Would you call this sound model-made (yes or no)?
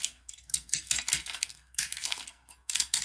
yes